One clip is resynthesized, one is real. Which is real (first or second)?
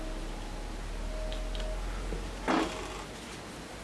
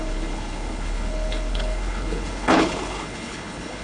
first